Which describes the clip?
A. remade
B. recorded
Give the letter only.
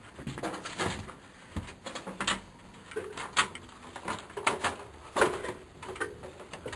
B